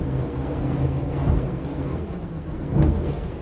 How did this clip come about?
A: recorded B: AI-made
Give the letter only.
B